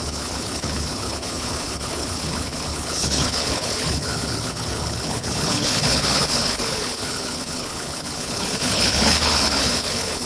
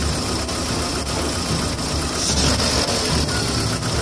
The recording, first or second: second